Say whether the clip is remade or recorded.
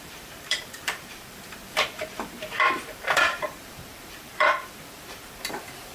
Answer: remade